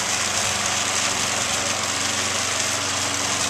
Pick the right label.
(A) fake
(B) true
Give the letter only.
B